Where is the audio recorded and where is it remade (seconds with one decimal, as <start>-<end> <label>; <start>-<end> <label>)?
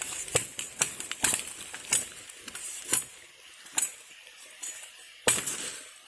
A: 0.0-0.4 recorded; 0.4-1.8 remade; 1.8-3.9 recorded; 3.9-6.1 remade